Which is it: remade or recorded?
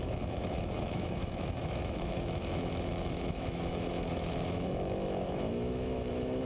remade